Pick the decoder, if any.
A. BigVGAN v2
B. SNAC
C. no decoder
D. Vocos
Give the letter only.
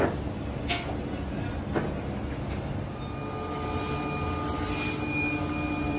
C